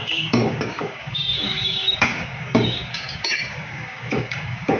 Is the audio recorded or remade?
remade